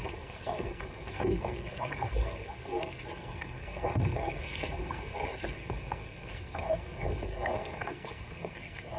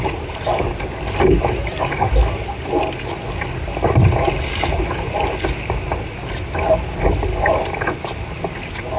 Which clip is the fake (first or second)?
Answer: first